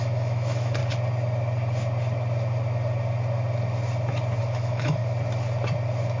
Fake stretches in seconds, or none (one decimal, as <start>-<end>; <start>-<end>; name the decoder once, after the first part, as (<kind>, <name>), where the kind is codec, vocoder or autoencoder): 0.0-0.8 (autoencoder, DAC-VAE); 4.4-5.0